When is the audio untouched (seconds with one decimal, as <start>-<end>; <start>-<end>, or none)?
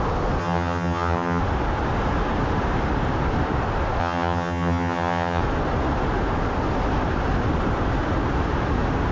0.0-0.4; 1.4-4.0; 5.4-9.1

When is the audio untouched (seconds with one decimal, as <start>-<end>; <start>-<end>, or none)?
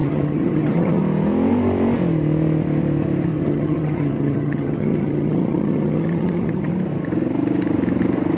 1.0-3.3; 6.7-8.4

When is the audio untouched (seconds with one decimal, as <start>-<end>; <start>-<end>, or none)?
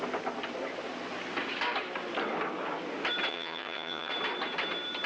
0.0-3.3; 4.1-5.1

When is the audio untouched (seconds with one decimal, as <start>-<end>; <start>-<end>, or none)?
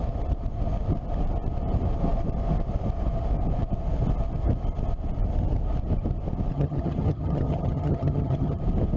0.0-6.5; 8.6-9.0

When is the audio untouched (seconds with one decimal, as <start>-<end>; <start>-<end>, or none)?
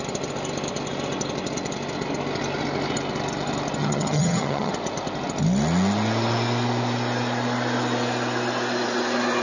0.0-3.8; 4.7-9.4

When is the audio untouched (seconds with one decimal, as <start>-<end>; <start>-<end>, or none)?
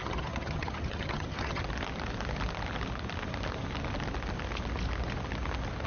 1.6-5.9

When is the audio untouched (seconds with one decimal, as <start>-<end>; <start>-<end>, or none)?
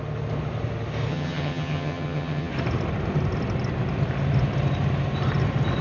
0.0-1.1; 2.5-5.8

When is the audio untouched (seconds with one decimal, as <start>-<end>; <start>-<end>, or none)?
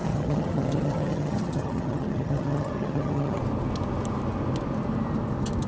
3.4-5.7